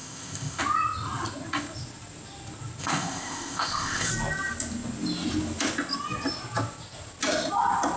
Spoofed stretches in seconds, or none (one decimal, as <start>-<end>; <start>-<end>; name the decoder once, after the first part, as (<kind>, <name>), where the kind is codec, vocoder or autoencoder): 0.0-0.6 (codec, ZipCodec); 2.8-4.1